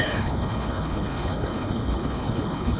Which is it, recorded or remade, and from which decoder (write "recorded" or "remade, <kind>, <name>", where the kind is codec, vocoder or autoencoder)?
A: remade, codec, HILCodec